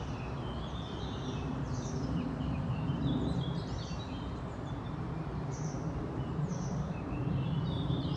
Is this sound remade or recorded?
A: remade